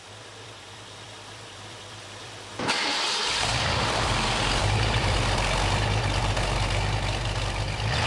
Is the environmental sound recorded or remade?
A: remade